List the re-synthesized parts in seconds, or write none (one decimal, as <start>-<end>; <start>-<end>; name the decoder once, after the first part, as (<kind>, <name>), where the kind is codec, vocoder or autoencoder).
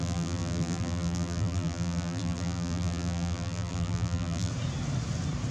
0.0-4.5 (vocoder, BigVGAN v2)